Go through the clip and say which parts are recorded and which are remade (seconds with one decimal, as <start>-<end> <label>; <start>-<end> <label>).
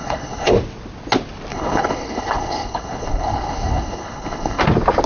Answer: 0.0-0.5 remade; 0.5-1.5 recorded; 1.5-4.6 remade; 4.6-5.1 recorded